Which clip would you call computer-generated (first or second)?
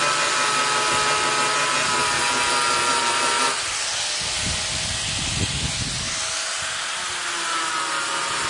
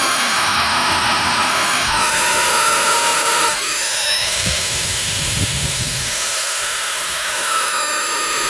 second